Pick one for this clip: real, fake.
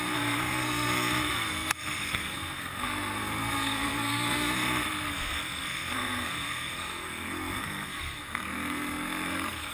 fake